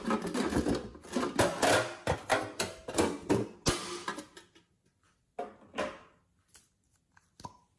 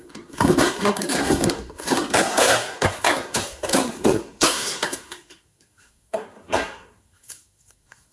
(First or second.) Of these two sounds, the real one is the first